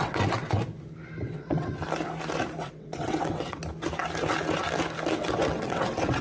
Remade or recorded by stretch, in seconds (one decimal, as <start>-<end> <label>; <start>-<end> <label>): 0.0-0.6 remade; 0.6-1.2 recorded; 1.2-1.8 remade; 1.8-2.6 recorded; 2.6-3.6 remade; 3.6-5.1 recorded; 5.1-6.2 remade